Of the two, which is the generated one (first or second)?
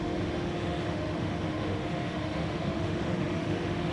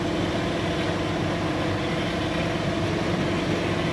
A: first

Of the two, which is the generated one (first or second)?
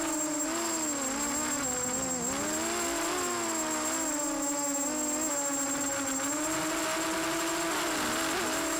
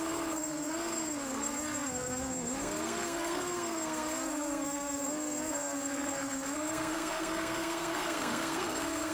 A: second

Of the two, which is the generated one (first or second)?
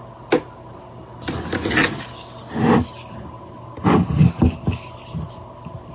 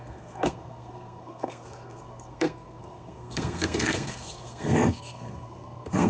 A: second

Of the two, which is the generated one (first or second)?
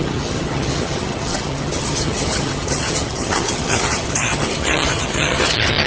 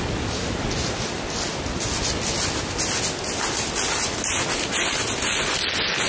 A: first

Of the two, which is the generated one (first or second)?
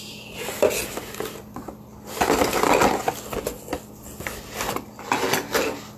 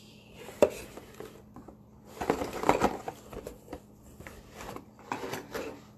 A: second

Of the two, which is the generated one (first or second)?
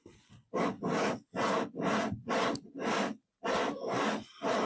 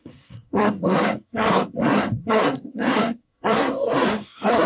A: second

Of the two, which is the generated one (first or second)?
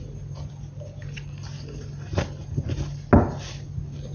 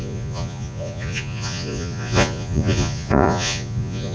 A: second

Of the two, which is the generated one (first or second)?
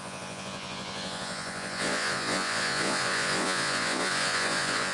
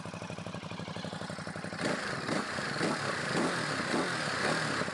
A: first